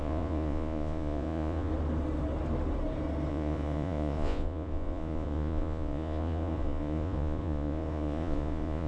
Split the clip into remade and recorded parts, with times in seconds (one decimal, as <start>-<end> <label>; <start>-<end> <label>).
0.0-1.7 remade; 1.7-3.3 recorded; 3.3-8.9 remade